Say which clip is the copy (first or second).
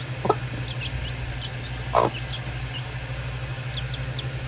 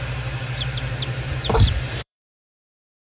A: second